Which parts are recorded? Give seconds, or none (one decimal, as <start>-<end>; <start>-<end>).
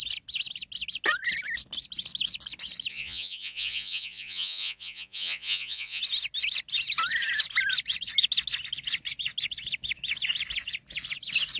0.0-2.9; 6.0-11.6